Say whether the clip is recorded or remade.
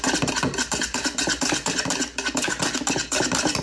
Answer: recorded